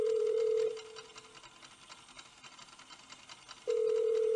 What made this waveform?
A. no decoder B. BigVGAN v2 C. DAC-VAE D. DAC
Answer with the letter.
B